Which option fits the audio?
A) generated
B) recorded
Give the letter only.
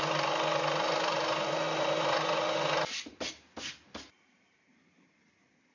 B